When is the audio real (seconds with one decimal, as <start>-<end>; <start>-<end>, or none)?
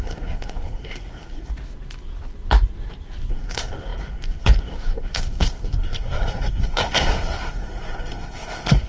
1.5-3.3